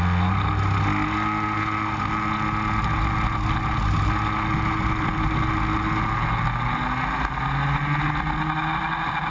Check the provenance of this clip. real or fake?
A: real